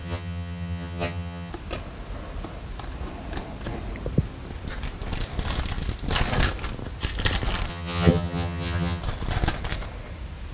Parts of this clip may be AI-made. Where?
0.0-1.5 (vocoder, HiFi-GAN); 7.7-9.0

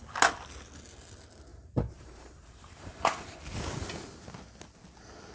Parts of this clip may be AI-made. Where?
1.5-3.4 (vocoder, BigVGAN v2)

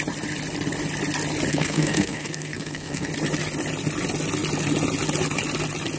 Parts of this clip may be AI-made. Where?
1.5-3.1 (codec, SNAC)

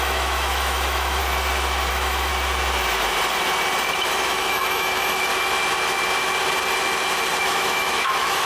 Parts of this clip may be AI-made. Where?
0.0-1.2 (autoencoder, DAC-VAE); 1.9-2.3; 4.1-5.3; 7.4-8.5

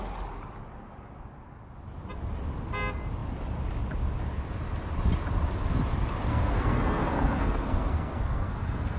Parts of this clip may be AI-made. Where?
6.3-9.0 (codec, SNAC)

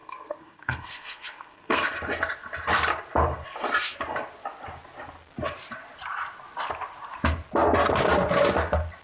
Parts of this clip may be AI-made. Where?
0.0-1.9 (codec, SNAC)